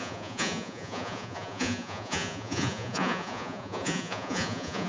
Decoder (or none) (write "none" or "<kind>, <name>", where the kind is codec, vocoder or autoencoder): vocoder, Vocos